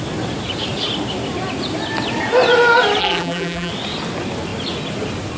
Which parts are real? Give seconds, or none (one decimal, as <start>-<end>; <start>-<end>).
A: 0.0-3.0; 3.7-5.4